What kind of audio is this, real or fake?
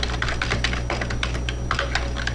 real